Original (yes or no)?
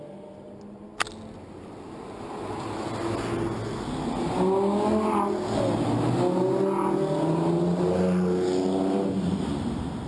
yes